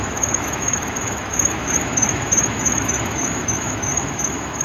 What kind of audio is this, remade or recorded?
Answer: remade